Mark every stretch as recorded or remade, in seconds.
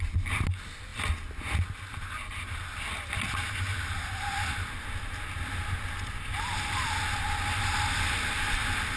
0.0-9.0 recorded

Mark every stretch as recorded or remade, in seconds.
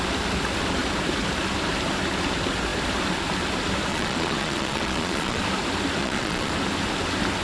0.0-3.9 recorded; 3.9-5.4 remade; 5.4-6.0 recorded; 6.0-6.5 remade; 6.5-7.4 recorded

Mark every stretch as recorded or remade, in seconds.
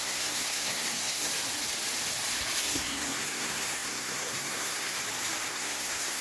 0.0-1.3 remade; 1.3-2.6 recorded; 2.6-5.0 remade; 5.0-5.5 recorded; 5.5-6.2 remade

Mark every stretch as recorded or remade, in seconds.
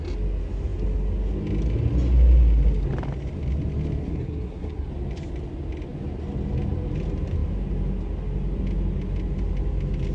0.0-4.0 recorded; 4.0-4.9 remade; 4.9-10.1 recorded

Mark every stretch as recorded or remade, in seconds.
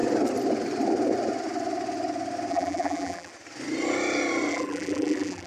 0.0-2.5 recorded; 2.5-3.3 remade; 3.3-4.5 recorded; 4.5-5.5 remade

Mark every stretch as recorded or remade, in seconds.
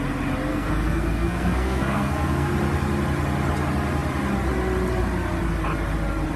0.0-0.5 recorded; 0.5-2.5 remade; 2.5-6.4 recorded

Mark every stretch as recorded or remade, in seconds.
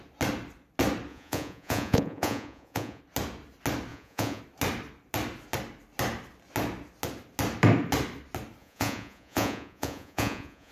0.0-1.1 recorded; 1.1-3.0 remade; 3.0-3.9 recorded; 3.9-4.4 remade; 4.4-8.6 recorded; 8.6-10.7 remade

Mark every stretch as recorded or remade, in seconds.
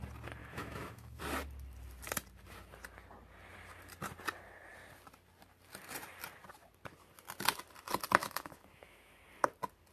0.0-0.4 recorded; 0.4-1.2 remade; 1.2-8.2 recorded; 8.2-9.2 remade; 9.2-9.9 recorded